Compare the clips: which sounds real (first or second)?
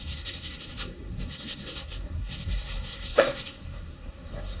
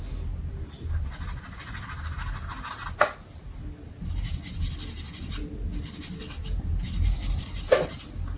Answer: second